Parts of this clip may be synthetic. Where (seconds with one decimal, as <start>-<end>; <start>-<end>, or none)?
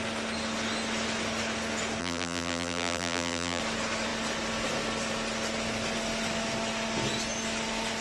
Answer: 2.0-3.6